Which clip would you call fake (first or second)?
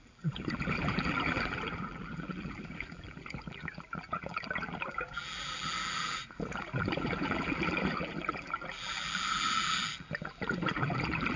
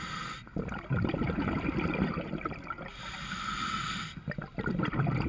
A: first